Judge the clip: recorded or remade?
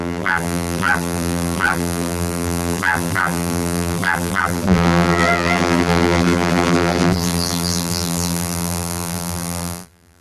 remade